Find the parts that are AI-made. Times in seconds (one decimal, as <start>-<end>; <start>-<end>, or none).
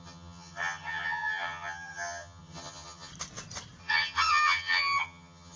0.0-3.1; 3.8-5.6